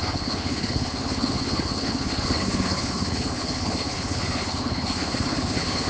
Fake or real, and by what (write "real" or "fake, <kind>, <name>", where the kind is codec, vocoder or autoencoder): fake, codec, HILCodec